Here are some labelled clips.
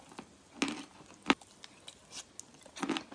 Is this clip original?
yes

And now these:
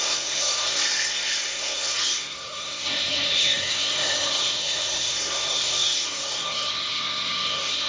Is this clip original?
no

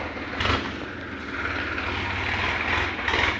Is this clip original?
yes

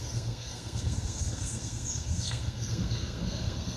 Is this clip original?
no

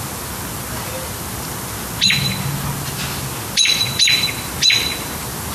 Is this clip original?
yes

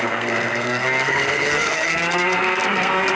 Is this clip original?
no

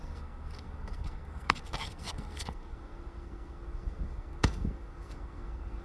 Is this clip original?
no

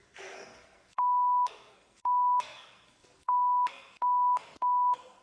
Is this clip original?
no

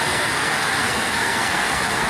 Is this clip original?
no